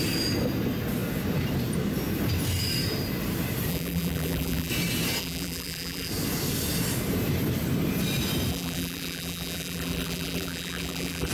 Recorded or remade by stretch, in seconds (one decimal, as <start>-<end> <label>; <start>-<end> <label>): 0.0-3.7 recorded; 3.7-4.7 remade; 4.7-5.2 recorded; 5.2-6.1 remade; 6.1-8.5 recorded; 8.5-11.3 remade